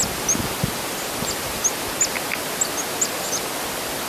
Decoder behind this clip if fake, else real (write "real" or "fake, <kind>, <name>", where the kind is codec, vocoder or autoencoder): real